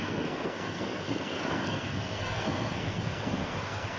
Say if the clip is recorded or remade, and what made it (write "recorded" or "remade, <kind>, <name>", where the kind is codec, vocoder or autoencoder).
remade, codec, SNAC